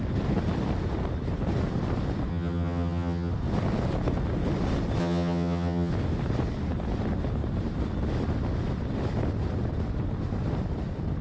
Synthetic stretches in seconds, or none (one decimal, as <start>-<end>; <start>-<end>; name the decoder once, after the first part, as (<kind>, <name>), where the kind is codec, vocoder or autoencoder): 2.3-3.3 (vocoder, HiFi-GAN); 5.0-5.9